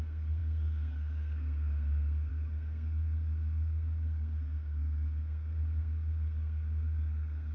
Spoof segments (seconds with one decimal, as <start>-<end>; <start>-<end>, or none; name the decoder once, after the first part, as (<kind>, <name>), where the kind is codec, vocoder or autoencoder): 0.0-7.5 (codec, SNAC)

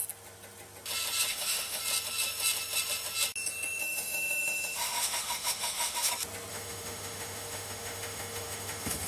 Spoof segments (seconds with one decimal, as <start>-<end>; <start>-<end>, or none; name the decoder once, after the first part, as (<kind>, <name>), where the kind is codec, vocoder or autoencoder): 1.3-1.8 (autoencoder, DAC-VAE); 3.8-6.1; 6.5-9.1

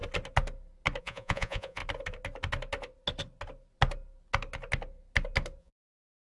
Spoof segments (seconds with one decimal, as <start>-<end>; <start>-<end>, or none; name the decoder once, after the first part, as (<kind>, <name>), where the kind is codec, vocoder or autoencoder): 1.0-1.8 (vocoder, Vocos); 5.6-6.4

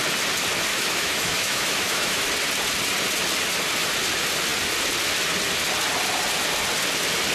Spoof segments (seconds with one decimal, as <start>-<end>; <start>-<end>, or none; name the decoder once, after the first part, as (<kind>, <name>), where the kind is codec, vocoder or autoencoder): 0.7-2.2 (autoencoder, DAC-VAE)

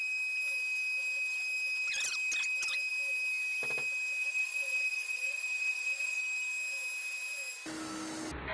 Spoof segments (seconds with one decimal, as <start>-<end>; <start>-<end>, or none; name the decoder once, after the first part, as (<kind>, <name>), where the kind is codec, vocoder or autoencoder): 4.2-6.2 (vocoder, Vocos)

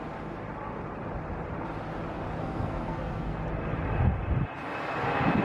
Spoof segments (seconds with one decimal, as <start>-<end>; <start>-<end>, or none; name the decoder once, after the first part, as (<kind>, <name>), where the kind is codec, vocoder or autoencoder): 2.4-3.4 (codec, SNAC)

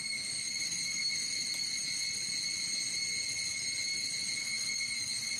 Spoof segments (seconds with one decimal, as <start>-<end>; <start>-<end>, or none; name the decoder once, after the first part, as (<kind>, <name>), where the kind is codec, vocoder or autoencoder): 0.0-1.2 (autoencoder, DAC-VAE); 4.4-5.4

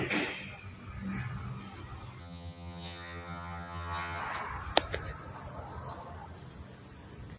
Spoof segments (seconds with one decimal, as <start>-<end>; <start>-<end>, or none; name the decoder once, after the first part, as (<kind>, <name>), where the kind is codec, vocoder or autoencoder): 2.2-4.2 (vocoder, HiFi-GAN)